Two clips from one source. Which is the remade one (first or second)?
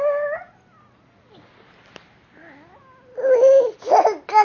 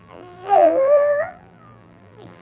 second